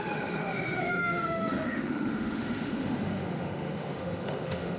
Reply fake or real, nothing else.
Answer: fake